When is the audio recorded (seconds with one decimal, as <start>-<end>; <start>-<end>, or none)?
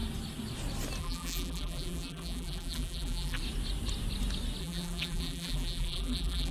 0.0-1.0; 3.4-4.6